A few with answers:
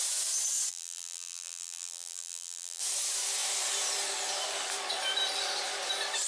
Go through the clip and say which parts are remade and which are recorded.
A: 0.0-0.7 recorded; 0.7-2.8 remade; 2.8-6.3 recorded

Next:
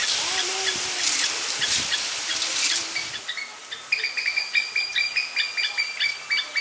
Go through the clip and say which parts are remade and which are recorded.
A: 0.0-6.6 recorded

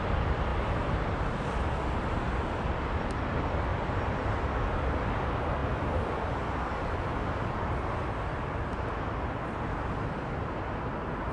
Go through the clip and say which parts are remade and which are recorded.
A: 0.0-11.3 recorded

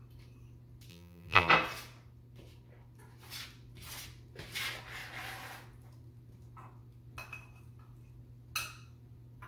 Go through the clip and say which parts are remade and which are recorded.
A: 0.0-0.9 recorded; 0.9-1.5 remade; 1.5-9.5 recorded

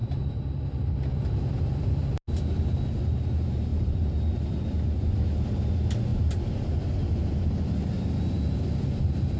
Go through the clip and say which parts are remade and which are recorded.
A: 0.0-2.1 remade; 2.1-3.7 recorded; 3.7-5.2 remade; 5.2-9.4 recorded

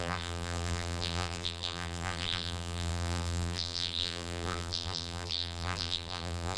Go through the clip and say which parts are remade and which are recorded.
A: 0.0-6.6 remade